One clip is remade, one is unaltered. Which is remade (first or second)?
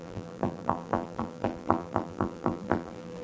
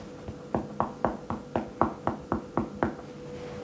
first